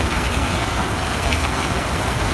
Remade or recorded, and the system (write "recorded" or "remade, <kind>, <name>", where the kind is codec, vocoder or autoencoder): remade, codec, SNAC